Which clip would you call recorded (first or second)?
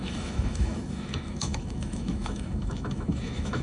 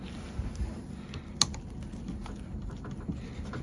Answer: second